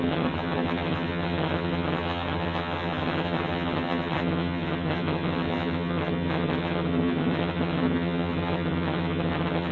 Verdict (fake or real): fake